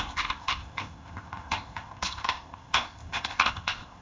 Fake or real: fake